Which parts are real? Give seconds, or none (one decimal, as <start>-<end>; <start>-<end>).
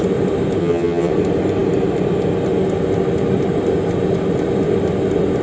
0.0-0.6; 1.1-5.4